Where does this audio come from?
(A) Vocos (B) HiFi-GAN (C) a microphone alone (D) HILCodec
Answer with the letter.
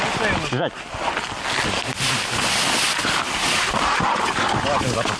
C